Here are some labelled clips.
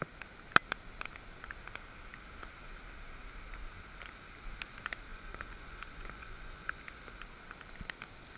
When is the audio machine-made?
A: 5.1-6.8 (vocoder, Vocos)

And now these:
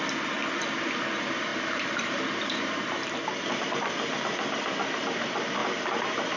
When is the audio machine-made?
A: 1.5-3.3 (vocoder, BigVGAN v2); 5.6-6.4

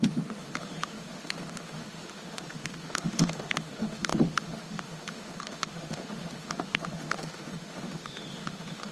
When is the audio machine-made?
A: 0.0-8.9 (autoencoder, DAC-VAE)

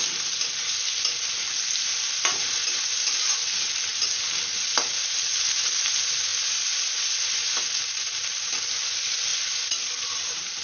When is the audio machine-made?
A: none

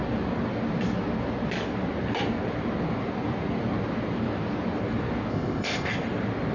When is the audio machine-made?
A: 5.3-5.9 (codec, ZipCodec)